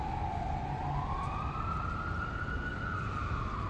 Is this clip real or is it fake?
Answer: real